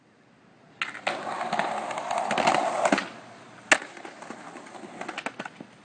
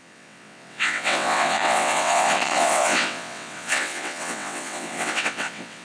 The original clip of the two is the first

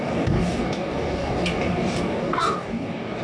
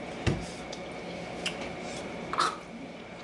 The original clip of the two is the second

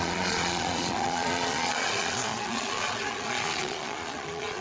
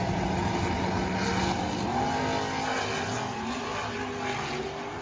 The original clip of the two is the second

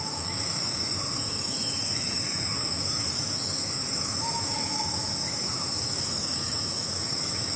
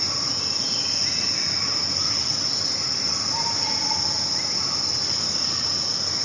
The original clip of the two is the second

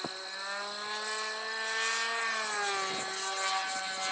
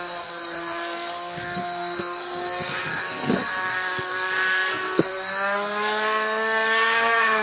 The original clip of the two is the first